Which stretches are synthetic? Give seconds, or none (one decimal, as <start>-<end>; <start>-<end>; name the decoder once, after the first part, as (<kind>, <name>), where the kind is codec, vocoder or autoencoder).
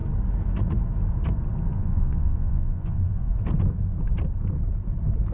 1.7-3.3 (vocoder, Vocos)